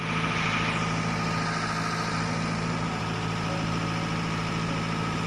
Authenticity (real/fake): real